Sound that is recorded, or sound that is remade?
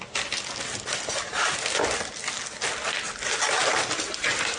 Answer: recorded